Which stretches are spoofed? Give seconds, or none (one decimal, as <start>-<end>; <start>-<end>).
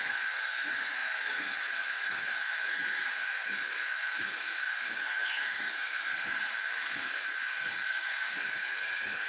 0.0-9.3